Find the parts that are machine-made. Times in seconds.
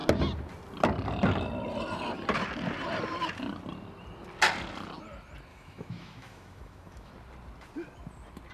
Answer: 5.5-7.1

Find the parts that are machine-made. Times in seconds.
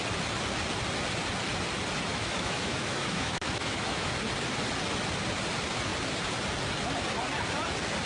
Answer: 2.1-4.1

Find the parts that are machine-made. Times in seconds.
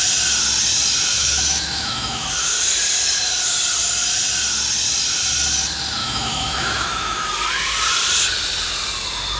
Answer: 1.1-2.3; 6.0-7.3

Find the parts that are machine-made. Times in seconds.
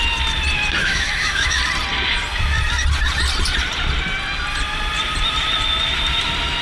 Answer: 0.8-1.6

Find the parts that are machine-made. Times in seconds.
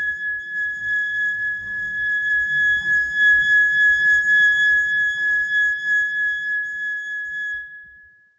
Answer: 0.8-2.3